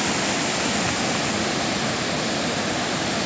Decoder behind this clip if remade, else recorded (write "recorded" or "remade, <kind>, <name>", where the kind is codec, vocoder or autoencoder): recorded